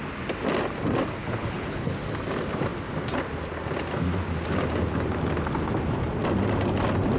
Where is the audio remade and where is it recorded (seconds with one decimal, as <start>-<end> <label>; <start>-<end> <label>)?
0.0-1.2 recorded; 1.2-1.9 remade; 1.9-7.2 recorded

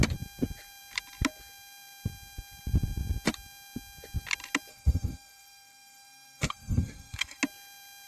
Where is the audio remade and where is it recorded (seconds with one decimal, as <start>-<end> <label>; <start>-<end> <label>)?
0.0-4.7 recorded; 4.7-7.4 remade; 7.4-8.1 recorded

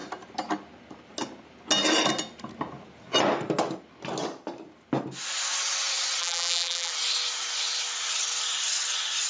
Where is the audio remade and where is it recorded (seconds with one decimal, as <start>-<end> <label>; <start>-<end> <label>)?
0.0-6.2 recorded; 6.2-6.9 remade; 6.9-9.3 recorded

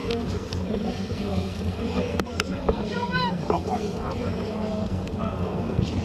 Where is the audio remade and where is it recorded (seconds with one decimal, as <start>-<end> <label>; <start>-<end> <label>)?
0.0-6.0 remade

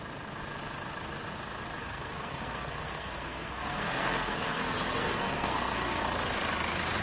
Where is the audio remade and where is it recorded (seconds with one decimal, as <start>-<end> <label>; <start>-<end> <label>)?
0.0-1.8 recorded; 1.8-6.0 remade; 6.0-7.0 recorded

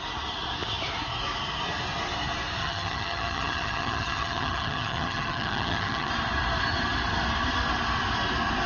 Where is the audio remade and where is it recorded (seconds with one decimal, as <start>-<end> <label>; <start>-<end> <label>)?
0.0-2.6 recorded; 2.6-6.1 remade; 6.1-8.7 recorded

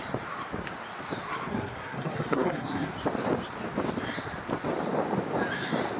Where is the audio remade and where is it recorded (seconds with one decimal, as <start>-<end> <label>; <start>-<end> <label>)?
0.0-1.5 recorded; 1.5-2.9 remade; 2.9-6.0 recorded